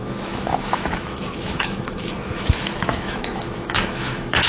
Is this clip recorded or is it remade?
remade